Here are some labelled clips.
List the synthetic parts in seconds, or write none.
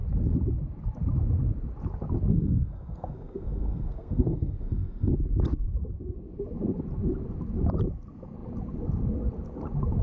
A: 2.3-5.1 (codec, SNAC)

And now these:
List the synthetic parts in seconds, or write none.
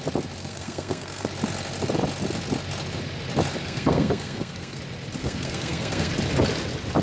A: 0.4-1.3 (codec, SNAC); 3.6-4.8; 5.2-6.1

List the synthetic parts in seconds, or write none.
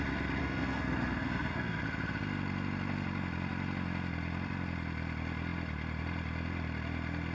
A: 0.4-1.8 (codec, SNAC)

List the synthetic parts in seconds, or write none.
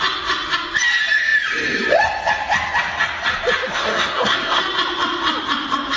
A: 3.7-4.6 (codec, SNAC)